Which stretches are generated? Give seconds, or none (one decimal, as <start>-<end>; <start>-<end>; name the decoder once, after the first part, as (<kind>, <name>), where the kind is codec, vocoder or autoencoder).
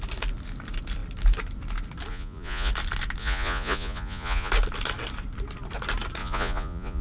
2.1-2.7 (vocoder, Vocos); 3.2-4.5; 6.2-7.0